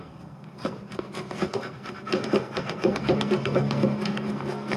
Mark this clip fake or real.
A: fake